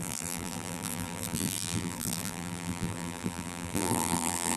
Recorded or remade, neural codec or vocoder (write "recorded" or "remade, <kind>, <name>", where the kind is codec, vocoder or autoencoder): remade, vocoder, BigVGAN v2